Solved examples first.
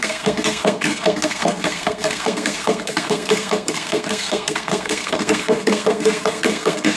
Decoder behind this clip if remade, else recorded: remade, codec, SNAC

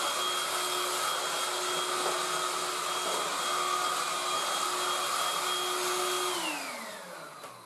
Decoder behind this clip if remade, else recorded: recorded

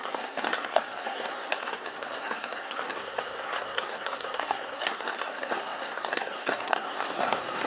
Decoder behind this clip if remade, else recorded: remade, codec, SNAC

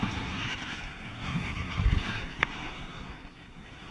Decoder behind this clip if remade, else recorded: remade, codec, SNAC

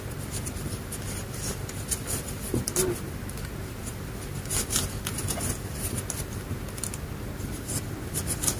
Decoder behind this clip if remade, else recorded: recorded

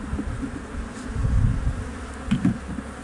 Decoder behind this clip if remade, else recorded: recorded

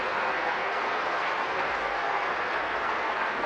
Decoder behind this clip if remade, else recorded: remade, codec, SNAC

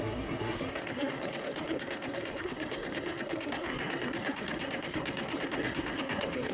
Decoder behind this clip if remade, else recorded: remade, codec, SNAC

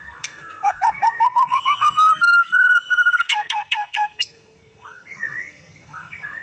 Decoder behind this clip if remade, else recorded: remade, codec, SNAC